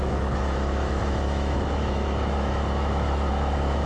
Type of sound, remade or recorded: remade